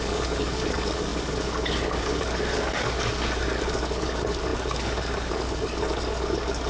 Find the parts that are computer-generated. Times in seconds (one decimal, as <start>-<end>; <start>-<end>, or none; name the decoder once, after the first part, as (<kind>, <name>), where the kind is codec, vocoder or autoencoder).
0.0-6.7 (codec, DAC)